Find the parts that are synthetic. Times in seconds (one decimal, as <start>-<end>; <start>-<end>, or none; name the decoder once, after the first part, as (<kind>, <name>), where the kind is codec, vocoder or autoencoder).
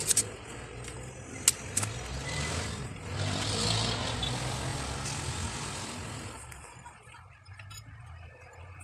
4.7-6.6 (vocoder, BigVGAN v2)